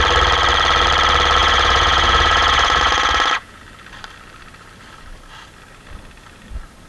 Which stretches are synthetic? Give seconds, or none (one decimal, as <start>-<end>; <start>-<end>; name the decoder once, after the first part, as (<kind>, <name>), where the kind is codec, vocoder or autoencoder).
1.4-3.6 (vocoder, Vocos)